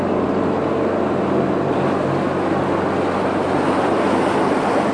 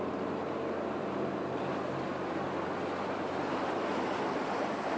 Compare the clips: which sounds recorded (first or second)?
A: first